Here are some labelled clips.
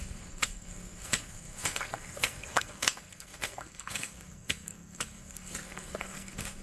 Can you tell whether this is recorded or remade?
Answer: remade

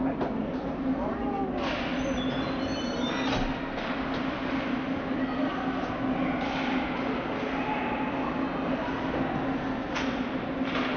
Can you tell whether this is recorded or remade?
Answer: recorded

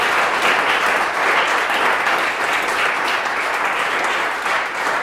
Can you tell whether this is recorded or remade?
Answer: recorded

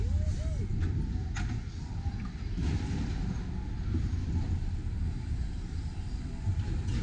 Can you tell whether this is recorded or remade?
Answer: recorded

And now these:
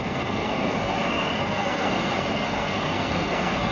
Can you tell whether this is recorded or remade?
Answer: remade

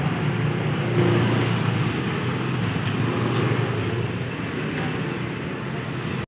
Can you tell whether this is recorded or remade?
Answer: recorded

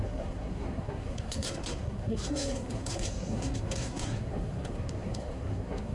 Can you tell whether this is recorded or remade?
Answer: remade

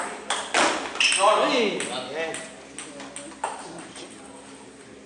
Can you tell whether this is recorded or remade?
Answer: recorded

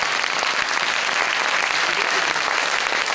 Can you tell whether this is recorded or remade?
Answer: recorded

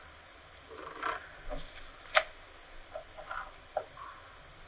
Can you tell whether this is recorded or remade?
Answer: recorded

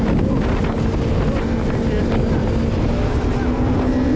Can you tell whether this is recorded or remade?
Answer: recorded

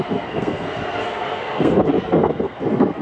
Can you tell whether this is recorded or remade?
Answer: remade